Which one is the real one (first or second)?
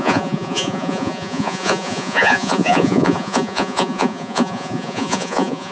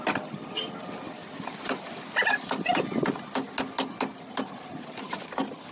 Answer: second